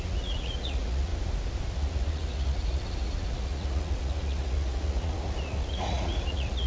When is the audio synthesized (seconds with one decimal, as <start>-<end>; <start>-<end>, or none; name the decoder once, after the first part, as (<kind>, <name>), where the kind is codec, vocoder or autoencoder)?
0.0-1.1 (vocoder, Vocos); 1.7-6.7